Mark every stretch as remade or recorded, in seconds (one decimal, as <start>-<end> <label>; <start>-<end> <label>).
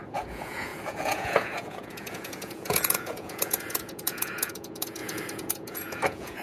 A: 0.0-6.4 remade